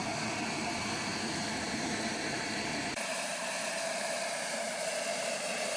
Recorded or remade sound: remade